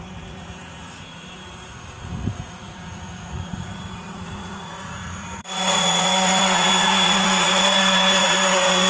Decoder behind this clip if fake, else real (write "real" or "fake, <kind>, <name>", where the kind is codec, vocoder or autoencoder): fake, vocoder, Vocos